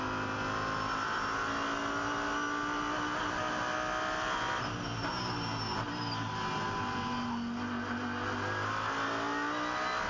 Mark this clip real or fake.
real